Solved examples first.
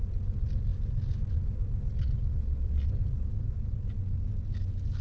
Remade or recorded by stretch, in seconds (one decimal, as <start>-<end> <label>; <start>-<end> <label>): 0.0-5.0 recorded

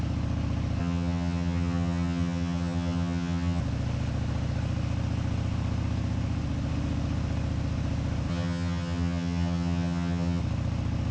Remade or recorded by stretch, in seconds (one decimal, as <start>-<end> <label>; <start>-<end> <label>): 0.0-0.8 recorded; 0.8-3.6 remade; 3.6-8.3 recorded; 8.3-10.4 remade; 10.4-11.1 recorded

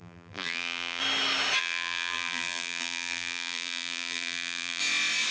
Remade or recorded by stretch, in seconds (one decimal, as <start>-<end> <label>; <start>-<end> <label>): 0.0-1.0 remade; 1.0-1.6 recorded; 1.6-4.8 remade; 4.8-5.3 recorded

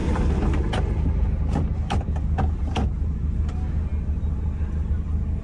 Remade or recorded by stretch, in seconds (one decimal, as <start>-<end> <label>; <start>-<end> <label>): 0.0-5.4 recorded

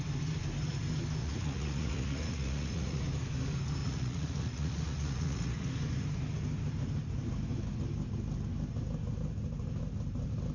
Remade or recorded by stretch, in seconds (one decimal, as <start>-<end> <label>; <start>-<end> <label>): 0.0-1.2 recorded; 1.2-3.0 remade; 3.0-3.8 recorded; 3.8-5.7 remade; 5.7-10.5 recorded

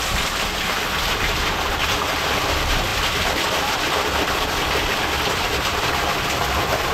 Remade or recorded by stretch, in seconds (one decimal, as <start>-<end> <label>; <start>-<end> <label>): 0.0-2.9 recorded; 2.9-5.8 remade; 5.8-6.9 recorded

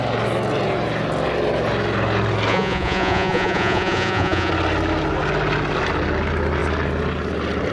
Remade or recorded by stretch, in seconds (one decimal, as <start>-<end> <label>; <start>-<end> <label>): 0.0-2.5 recorded; 2.5-4.5 remade; 4.5-7.7 recorded

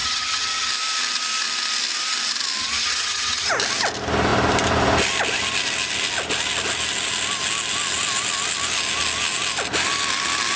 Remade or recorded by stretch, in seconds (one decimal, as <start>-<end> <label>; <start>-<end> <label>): 0.0-0.7 remade; 0.7-2.6 recorded; 2.6-3.5 remade; 3.5-10.6 recorded